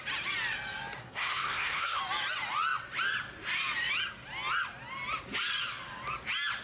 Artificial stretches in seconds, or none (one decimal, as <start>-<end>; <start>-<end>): 1.0-2.0